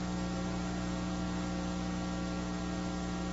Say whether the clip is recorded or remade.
recorded